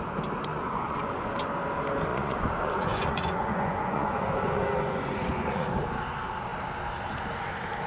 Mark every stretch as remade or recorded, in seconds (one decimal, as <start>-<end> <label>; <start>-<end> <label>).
0.0-0.5 recorded; 0.5-1.3 remade; 1.3-2.1 recorded; 2.1-5.7 remade; 5.7-7.9 recorded